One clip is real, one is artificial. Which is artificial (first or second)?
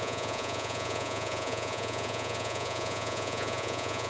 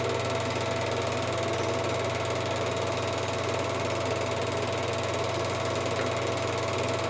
first